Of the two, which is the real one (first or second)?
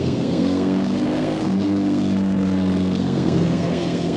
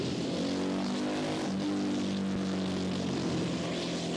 second